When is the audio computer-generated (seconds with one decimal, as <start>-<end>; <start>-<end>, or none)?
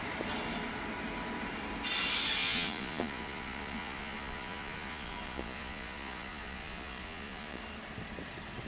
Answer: 2.4-7.6